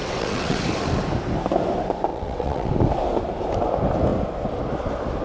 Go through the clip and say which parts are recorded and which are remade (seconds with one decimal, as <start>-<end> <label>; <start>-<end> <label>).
0.0-0.6 remade; 0.6-2.1 recorded; 2.1-2.7 remade; 2.7-5.2 recorded